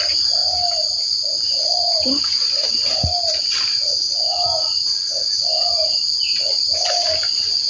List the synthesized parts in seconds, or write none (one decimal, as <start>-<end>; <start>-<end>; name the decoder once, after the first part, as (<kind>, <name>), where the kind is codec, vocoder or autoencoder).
none